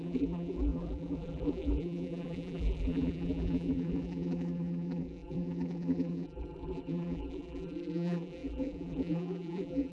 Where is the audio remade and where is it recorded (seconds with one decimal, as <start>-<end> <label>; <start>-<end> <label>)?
0.0-9.9 remade